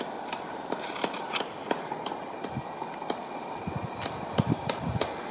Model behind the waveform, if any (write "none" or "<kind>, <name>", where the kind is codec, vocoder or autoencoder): none